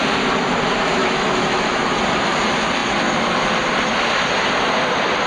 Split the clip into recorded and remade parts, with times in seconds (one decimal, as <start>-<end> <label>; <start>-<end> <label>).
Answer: 0.0-1.0 recorded; 1.0-2.0 remade; 2.0-5.3 recorded